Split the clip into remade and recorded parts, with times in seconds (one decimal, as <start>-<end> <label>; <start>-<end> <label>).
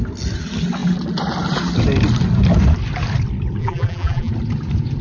0.0-3.6 recorded; 3.6-4.3 remade; 4.3-5.0 recorded